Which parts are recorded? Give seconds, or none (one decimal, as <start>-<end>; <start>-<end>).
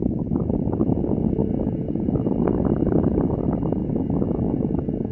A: 1.4-2.3; 3.8-5.1